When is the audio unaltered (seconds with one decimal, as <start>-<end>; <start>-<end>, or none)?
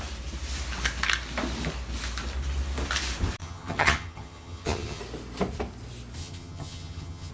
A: 0.0-3.4; 5.0-6.2